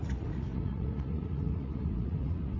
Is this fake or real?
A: fake